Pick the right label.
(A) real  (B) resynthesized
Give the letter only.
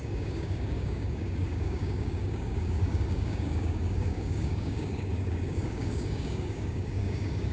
B